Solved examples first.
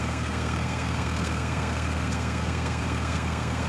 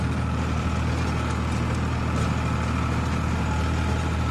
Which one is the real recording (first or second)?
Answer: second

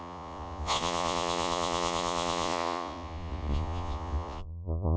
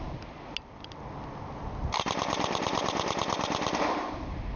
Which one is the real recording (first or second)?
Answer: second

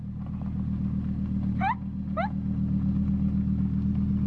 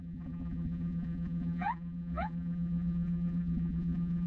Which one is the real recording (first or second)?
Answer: first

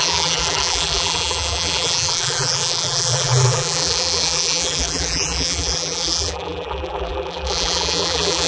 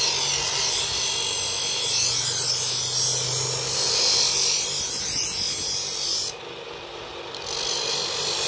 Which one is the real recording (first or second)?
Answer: second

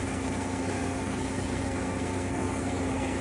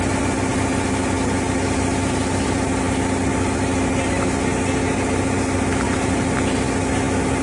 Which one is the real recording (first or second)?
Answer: second